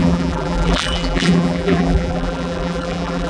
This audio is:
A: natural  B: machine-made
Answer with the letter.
B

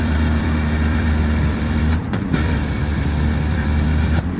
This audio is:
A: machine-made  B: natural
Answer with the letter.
A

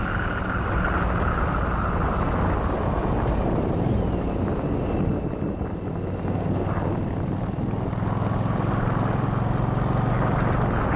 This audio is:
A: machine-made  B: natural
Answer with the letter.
B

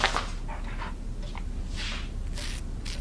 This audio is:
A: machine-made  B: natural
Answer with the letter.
B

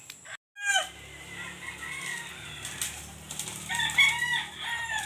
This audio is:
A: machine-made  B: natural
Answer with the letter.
B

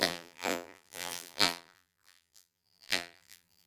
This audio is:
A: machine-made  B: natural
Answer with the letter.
A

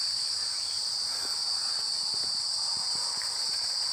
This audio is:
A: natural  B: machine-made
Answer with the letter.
B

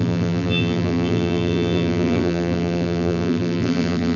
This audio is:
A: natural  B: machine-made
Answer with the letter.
B